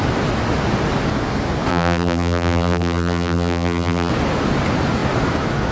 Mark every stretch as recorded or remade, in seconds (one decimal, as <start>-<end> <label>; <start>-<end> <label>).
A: 0.0-1.7 recorded; 1.7-4.1 remade; 4.1-5.7 recorded